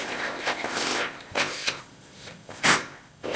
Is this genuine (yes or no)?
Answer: no